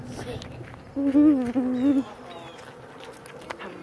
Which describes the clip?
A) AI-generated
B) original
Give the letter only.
B